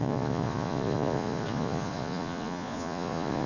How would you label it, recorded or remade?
remade